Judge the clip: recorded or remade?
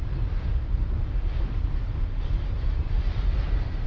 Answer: recorded